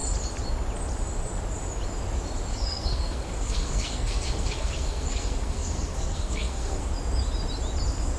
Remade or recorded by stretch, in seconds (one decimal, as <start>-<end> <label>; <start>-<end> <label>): 0.0-2.5 recorded; 2.5-6.9 remade; 6.9-8.2 recorded